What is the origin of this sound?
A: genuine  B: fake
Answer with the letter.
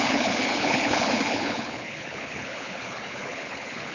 B